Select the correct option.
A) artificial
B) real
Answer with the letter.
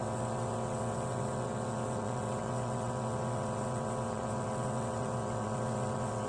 A